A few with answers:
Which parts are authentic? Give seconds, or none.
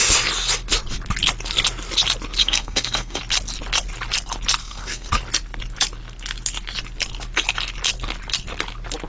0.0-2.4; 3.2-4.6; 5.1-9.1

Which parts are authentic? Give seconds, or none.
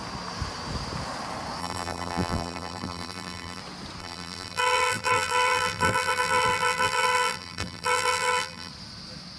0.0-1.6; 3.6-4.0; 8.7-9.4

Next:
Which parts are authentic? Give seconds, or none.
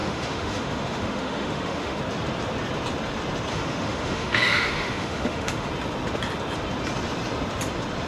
2.0-3.5; 5.7-8.1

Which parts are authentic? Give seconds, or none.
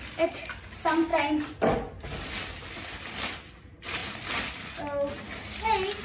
0.0-6.0